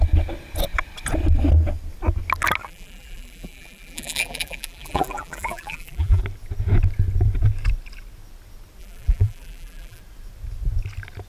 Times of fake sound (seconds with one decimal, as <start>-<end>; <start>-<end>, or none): 2.6-6.2; 8.8-10.0